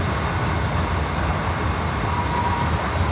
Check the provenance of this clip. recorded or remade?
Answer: recorded